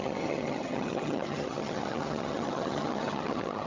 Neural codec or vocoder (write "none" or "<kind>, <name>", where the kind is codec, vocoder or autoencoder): vocoder, HiFi-GAN